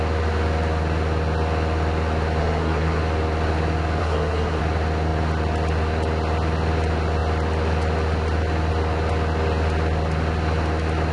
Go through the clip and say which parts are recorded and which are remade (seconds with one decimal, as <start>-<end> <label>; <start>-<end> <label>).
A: 0.0-2.4 recorded; 2.4-3.0 remade; 3.0-4.0 recorded; 4.0-4.6 remade; 4.6-11.1 recorded